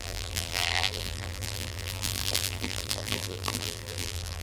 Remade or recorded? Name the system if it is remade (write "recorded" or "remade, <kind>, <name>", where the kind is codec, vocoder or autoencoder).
remade, vocoder, BigVGAN v2